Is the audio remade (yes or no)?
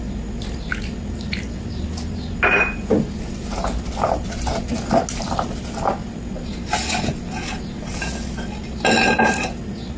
no